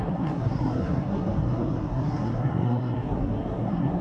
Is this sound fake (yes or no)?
yes